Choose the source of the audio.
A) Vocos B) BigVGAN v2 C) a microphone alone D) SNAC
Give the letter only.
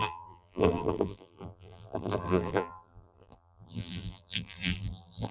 B